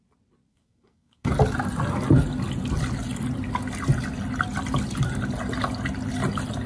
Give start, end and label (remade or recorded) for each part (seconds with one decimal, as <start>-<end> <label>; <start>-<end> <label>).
0.0-0.5 recorded; 0.5-1.3 remade; 1.3-6.7 recorded